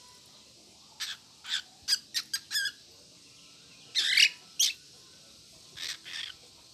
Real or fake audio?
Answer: real